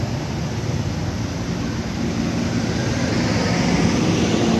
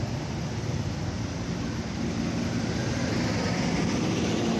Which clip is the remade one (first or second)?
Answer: second